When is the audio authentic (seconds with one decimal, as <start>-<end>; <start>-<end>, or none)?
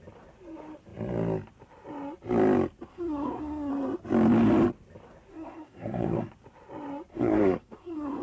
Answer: 0.0-2.9; 3.7-5.3; 6.3-7.1